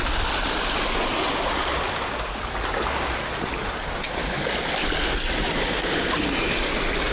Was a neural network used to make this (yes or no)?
no